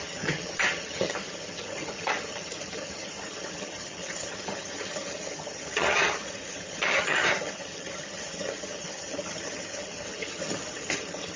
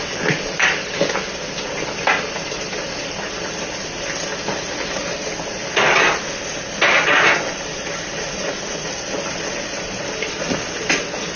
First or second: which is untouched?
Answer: second